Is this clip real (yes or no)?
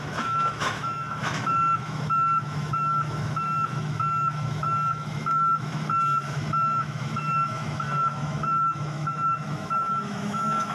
no